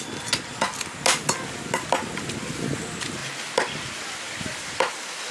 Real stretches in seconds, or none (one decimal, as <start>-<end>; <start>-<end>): 0.0-5.3